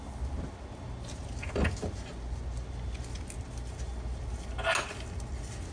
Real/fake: real